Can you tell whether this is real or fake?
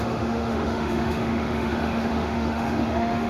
fake